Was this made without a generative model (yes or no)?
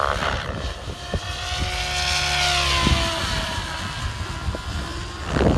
yes